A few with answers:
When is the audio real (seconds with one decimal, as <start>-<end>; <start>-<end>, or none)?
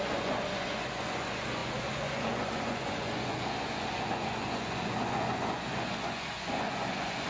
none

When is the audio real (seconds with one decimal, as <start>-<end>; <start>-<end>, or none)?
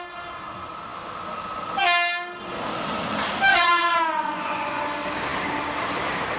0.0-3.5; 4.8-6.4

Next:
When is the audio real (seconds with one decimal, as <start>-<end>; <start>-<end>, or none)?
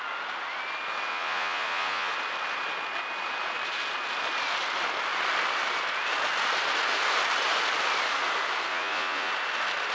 0.0-1.1; 2.1-8.7; 9.3-9.9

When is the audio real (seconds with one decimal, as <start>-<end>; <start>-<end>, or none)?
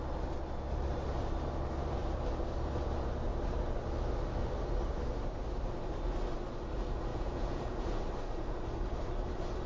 0.0-7.1; 8.0-9.7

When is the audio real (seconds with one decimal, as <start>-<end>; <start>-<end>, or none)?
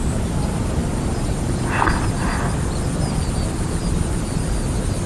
0.0-5.1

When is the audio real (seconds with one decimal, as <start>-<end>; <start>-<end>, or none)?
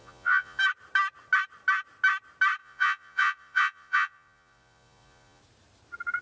0.6-2.6; 5.4-6.2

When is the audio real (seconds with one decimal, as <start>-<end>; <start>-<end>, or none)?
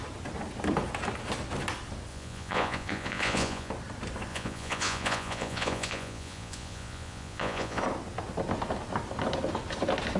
0.0-2.1; 3.7-4.3; 7.8-10.2